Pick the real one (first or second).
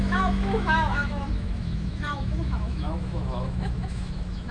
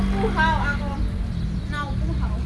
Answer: second